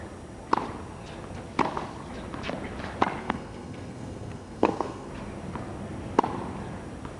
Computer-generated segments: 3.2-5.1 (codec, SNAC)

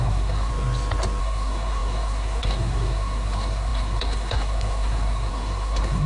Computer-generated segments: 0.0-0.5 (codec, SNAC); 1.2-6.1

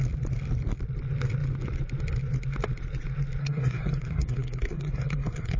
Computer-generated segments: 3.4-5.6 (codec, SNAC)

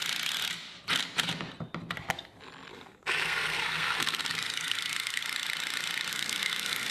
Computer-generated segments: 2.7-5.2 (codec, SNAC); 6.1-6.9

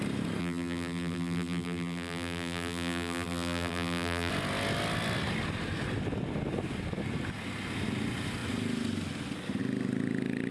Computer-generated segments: 0.4-4.3 (vocoder, BigVGAN v2)

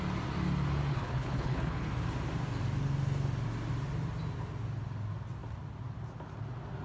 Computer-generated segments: 0.9-1.9 (codec, HILCodec)

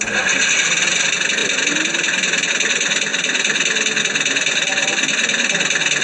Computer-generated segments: none